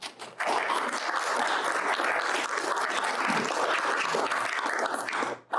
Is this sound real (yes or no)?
yes